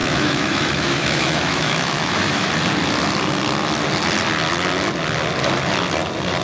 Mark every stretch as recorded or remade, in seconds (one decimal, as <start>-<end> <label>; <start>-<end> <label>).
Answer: 0.0-2.5 remade; 2.5-6.4 recorded